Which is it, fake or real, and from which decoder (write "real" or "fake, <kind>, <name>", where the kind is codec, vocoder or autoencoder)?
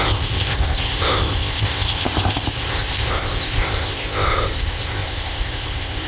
fake, codec, ZipCodec